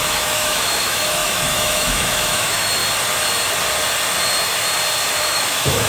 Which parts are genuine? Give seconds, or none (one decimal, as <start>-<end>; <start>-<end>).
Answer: 2.8-5.2